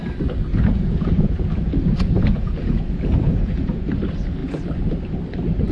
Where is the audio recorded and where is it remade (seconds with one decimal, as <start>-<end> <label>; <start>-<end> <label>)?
0.0-0.5 recorded; 0.5-3.9 remade; 3.9-5.7 recorded